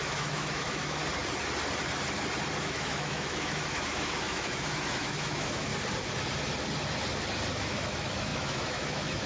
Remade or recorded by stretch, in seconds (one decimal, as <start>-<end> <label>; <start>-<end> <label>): 0.0-1.0 remade; 1.0-2.6 recorded; 2.6-5.7 remade; 5.7-7.5 recorded; 7.5-9.3 remade